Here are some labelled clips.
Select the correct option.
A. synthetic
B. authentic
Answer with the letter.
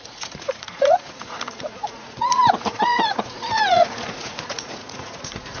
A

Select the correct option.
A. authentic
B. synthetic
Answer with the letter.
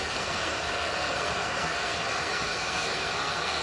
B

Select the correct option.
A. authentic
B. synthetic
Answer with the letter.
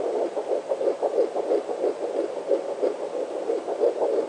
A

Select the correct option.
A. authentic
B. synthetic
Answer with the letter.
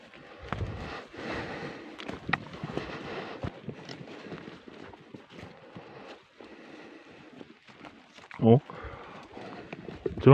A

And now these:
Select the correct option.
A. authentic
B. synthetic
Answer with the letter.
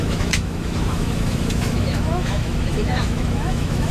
B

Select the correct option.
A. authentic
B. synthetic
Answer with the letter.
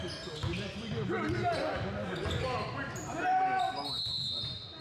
A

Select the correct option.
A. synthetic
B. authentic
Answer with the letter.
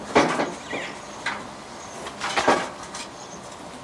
B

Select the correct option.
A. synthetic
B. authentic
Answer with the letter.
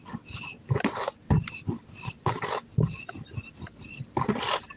B